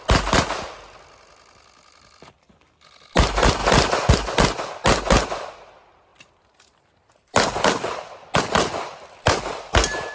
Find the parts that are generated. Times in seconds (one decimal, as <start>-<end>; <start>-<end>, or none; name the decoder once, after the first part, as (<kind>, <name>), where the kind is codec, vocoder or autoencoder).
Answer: none